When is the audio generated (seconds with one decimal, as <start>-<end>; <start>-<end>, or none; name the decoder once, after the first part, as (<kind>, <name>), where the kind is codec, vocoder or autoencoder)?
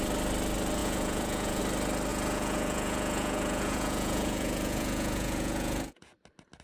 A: 0.8-1.6 (vocoder, Vocos); 2.1-6.1